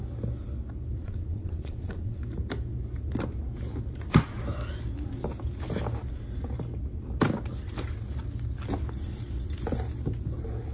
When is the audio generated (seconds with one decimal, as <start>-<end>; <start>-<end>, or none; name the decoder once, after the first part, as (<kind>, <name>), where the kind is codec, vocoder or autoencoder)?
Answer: 1.0-2.2 (vocoder, WaveNeXt)